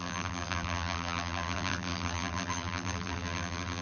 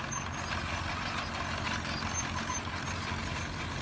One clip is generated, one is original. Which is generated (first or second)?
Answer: first